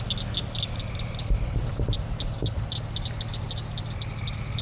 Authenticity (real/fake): real